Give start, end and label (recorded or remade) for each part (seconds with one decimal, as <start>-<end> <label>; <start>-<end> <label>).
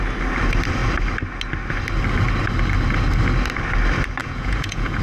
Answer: 0.0-4.2 recorded; 4.2-5.0 remade